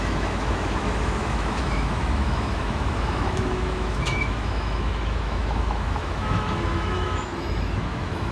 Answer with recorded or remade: remade